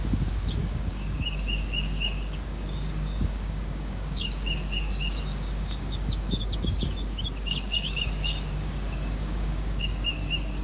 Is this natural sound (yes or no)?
no